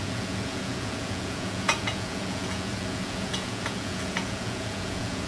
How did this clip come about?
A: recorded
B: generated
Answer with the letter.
B